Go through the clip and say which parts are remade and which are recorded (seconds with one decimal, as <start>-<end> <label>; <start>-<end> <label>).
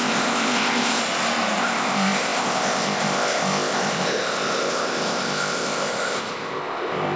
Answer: 0.0-1.0 remade; 1.0-1.6 recorded; 1.6-7.2 remade